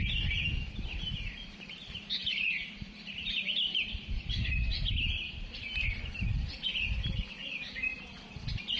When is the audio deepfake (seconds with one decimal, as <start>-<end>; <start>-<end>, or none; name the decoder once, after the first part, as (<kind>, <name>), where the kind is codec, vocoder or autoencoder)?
2.2-6.1 (vocoder, BigVGAN v2)